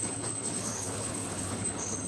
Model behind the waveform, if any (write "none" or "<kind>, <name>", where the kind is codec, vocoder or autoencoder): codec, HILCodec